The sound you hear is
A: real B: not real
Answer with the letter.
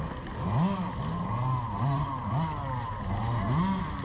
A